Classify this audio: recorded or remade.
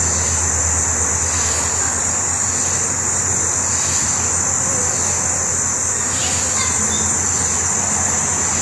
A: recorded